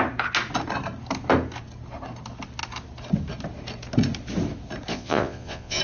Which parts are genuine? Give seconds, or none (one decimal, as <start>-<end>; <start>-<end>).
0.0-4.9